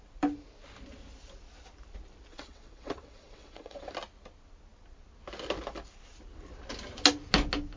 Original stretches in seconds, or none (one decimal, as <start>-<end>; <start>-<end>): 0.0-2.3; 3.9-7.8

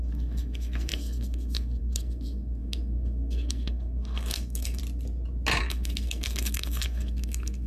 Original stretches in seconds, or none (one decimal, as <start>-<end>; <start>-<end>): 4.8-5.6

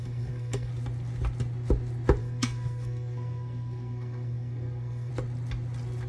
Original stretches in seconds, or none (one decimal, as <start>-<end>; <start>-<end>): 0.7-2.2; 5.1-6.1

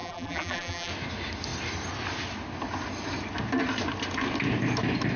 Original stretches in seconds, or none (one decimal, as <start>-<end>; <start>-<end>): 0.9-5.2

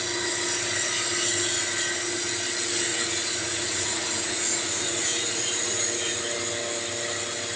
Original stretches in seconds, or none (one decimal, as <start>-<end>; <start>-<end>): 0.0-2.9; 6.2-7.6

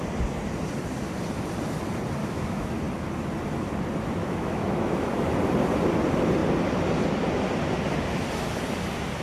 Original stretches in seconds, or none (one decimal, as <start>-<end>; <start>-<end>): 0.0-2.2; 2.8-4.2; 5.1-9.2

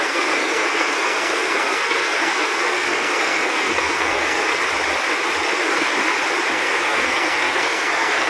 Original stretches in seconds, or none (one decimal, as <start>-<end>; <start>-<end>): 4.5-5.4; 5.9-6.5